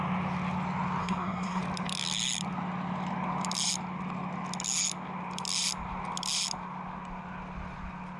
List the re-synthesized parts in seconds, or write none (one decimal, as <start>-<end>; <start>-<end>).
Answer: 1.0-1.6